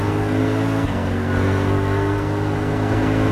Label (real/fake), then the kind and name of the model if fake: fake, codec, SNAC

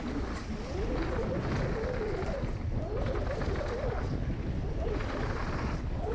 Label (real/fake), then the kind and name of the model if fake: real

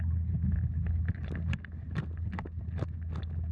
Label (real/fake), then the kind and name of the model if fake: real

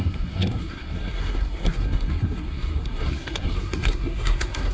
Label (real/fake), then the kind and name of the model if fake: fake, codec, SNAC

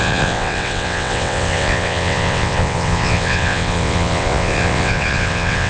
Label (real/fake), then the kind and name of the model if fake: fake, vocoder, WaveNeXt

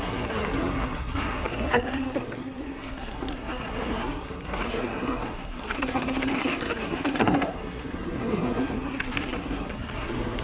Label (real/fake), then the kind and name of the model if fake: fake, codec, SNAC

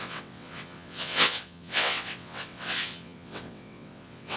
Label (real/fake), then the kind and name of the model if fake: fake, vocoder, WaveNeXt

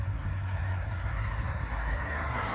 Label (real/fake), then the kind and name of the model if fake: fake, codec, SNAC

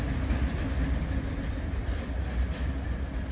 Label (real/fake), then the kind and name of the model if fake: real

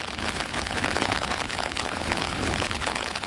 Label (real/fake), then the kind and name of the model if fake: fake, codec, HILCodec